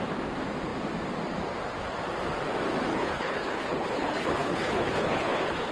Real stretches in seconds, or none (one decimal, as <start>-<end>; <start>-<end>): 0.0-2.9